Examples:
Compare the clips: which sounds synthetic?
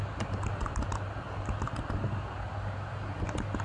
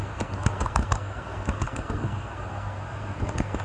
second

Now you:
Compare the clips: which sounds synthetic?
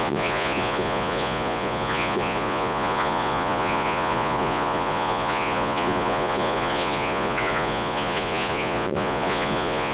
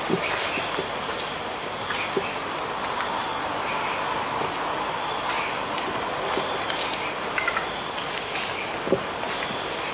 first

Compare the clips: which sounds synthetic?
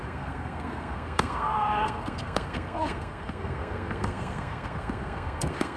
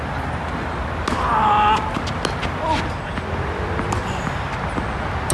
first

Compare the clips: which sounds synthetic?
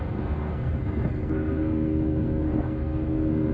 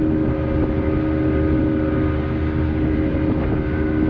first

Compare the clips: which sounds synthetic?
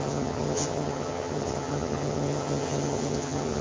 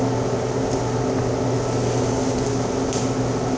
first